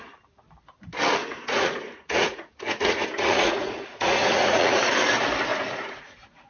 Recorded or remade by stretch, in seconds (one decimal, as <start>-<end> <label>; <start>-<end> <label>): 0.0-1.2 recorded; 1.2-4.8 remade; 4.8-5.5 recorded; 5.5-6.5 remade